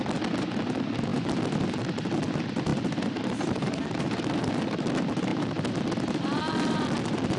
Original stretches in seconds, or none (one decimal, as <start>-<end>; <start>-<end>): 0.0-7.4